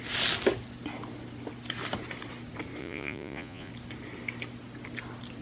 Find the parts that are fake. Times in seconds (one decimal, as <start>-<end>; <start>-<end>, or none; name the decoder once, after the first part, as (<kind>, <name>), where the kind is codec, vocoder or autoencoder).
2.8-3.7 (vocoder, Vocos)

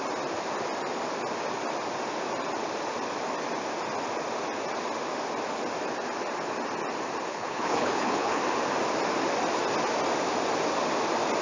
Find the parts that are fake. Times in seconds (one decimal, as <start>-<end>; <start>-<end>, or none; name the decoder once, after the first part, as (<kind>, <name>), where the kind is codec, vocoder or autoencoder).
7.3-8.4 (codec, HILCodec)